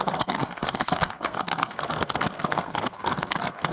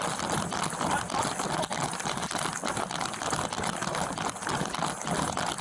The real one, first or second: second